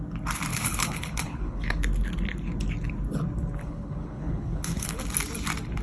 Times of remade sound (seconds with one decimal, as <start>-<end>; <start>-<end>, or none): 0.5-1.8; 3.6-5.0